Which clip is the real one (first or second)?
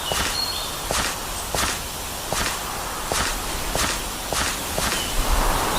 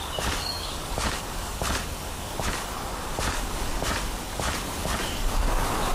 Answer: first